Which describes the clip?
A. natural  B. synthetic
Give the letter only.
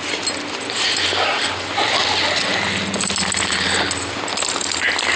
A